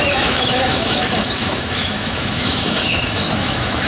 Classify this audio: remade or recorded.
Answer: remade